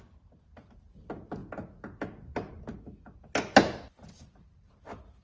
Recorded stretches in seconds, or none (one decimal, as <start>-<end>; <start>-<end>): 0.0-5.2